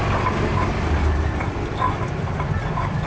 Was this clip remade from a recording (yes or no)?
yes